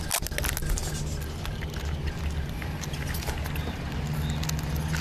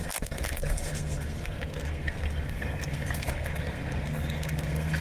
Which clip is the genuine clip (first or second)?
first